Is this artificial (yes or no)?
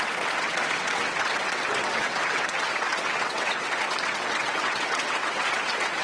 yes